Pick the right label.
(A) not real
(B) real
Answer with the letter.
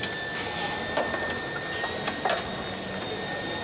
B